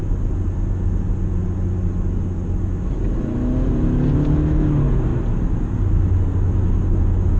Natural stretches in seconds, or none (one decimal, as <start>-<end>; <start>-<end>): 0.0-5.1; 5.9-7.4